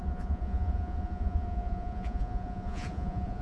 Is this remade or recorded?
remade